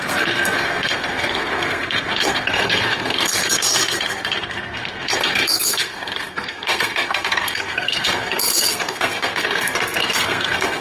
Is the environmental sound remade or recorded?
remade